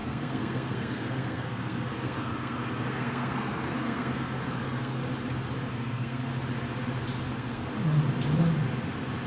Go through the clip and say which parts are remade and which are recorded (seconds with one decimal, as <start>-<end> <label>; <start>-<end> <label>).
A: 0.0-5.0 remade; 5.0-5.7 recorded; 5.7-6.3 remade; 6.3-7.3 recorded; 7.3-7.7 remade; 7.7-9.3 recorded